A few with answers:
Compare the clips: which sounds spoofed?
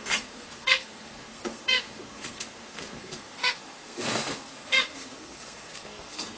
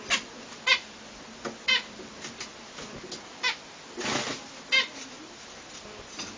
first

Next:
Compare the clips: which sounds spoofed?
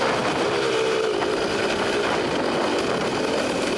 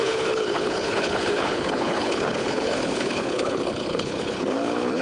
second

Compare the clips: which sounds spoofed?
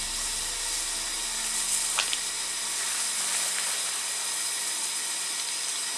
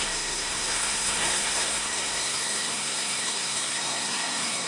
second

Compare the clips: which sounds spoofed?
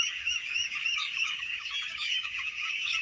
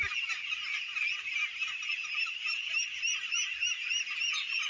first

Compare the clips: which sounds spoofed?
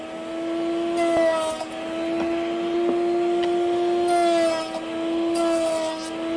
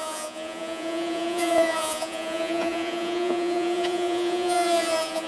second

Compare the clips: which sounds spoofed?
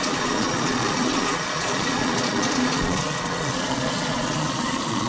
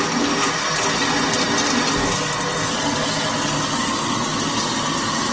first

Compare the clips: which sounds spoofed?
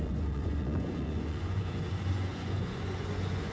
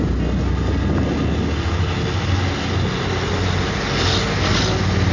first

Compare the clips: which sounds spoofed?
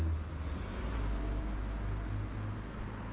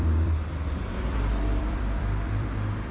second